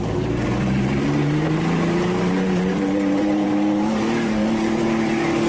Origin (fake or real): fake